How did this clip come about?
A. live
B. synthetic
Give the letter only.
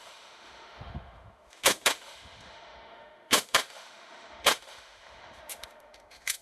B